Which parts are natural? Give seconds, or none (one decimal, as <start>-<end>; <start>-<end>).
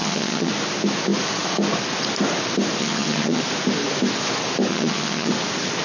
0.5-2.8; 3.4-4.7; 5.3-5.8